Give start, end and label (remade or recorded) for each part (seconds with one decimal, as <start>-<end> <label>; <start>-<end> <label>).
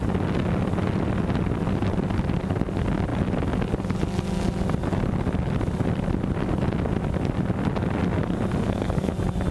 0.0-8.6 recorded; 8.6-9.1 remade; 9.1-9.5 recorded